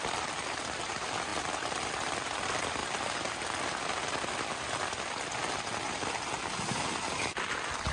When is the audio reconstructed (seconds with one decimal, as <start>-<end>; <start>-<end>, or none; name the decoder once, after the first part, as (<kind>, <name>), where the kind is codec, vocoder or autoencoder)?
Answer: 0.0-2.8 (vocoder, BigVGAN v2); 7.4-7.9